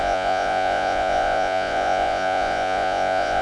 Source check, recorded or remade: remade